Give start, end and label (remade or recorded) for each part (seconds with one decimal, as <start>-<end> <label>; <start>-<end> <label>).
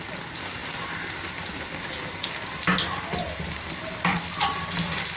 0.0-5.2 recorded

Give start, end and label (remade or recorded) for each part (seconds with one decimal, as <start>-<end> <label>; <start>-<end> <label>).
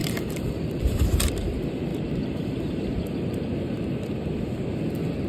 0.0-1.5 remade; 1.5-1.9 recorded; 1.9-3.4 remade; 3.4-5.3 recorded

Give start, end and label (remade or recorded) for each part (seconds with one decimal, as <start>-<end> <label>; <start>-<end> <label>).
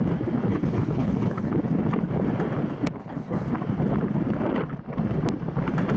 0.0-0.5 recorded; 0.5-1.5 remade; 1.5-3.0 recorded; 3.0-3.5 remade; 3.5-6.0 recorded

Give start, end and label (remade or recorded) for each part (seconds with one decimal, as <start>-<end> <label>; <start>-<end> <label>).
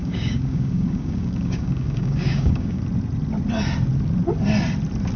0.0-2.8 remade; 2.8-5.2 recorded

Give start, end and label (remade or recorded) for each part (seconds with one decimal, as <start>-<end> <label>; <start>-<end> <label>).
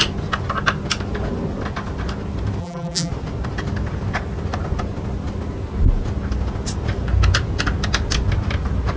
0.0-2.6 recorded; 2.6-3.1 remade; 3.1-9.0 recorded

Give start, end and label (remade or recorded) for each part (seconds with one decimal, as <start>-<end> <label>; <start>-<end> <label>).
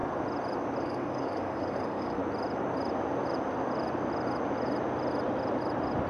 0.0-0.8 recorded; 0.8-2.2 remade; 2.2-6.1 recorded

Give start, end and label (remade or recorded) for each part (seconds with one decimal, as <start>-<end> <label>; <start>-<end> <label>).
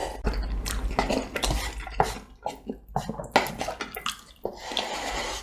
0.0-5.4 recorded